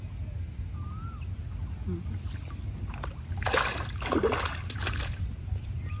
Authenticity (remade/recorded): recorded